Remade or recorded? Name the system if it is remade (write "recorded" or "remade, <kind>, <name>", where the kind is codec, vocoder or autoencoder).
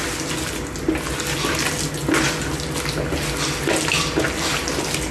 recorded